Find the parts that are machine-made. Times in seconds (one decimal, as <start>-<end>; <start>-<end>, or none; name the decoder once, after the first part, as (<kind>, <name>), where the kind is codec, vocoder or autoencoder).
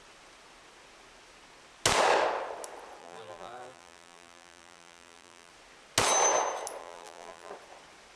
3.0-5.5 (vocoder, BigVGAN v2); 6.8-7.5